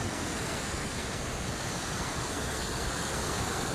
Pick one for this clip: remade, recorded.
remade